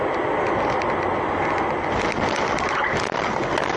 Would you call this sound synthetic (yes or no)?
no